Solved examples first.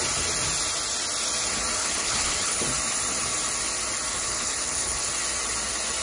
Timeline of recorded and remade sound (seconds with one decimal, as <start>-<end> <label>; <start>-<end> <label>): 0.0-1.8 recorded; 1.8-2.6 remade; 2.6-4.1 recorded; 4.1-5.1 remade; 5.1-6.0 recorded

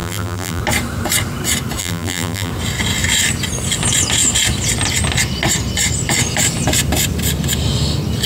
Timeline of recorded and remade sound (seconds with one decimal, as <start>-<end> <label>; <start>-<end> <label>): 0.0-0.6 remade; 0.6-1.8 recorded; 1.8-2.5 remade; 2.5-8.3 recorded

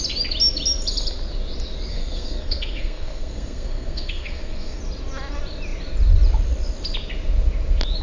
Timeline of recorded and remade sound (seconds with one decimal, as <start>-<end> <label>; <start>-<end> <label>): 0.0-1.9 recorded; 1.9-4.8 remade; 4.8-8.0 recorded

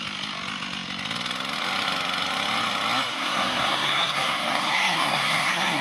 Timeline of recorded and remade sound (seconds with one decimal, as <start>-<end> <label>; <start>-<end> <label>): 0.0-3.1 recorded; 3.1-5.8 remade